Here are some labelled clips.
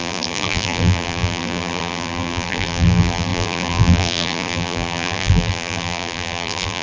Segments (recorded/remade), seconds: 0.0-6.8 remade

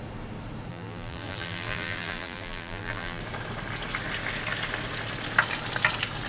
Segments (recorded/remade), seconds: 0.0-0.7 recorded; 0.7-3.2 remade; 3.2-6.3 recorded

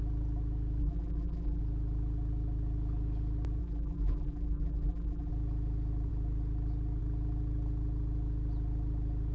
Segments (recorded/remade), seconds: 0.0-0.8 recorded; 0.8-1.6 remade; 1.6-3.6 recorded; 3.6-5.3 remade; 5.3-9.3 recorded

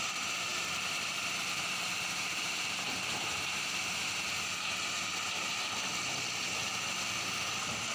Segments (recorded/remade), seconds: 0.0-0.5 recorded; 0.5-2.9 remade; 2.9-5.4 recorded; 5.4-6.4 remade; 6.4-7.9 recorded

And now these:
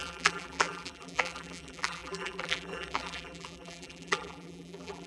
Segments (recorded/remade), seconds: 0.0-5.1 remade

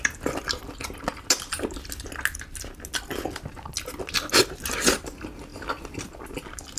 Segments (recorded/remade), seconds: 0.0-5.5 recorded; 5.5-6.8 remade